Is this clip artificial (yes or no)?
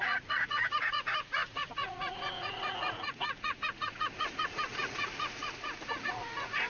yes